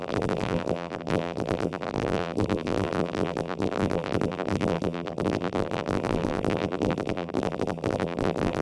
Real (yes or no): no